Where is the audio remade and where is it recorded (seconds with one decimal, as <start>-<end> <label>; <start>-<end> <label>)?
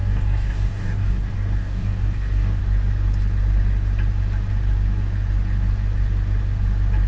0.0-2.6 remade; 2.6-7.1 recorded